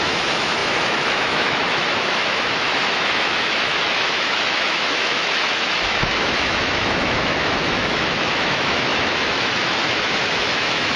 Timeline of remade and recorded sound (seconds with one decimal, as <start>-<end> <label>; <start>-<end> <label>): 0.0-11.0 remade